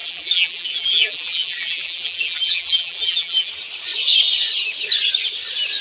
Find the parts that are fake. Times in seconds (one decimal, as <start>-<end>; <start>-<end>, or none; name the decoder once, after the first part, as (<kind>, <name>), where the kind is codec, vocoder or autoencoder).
0.0-3.5 (vocoder, BigVGAN v2)